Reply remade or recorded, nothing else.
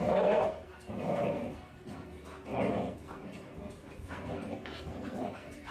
remade